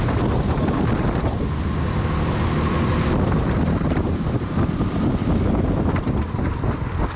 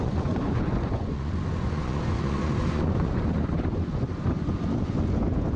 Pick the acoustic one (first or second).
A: first